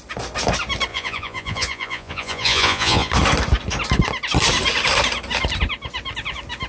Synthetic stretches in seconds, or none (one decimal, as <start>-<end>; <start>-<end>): 0.9-3.1